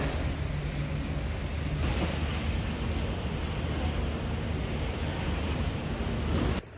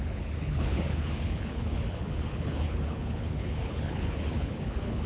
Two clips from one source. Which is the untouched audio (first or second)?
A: first